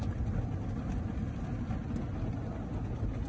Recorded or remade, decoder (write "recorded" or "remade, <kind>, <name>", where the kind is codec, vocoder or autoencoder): recorded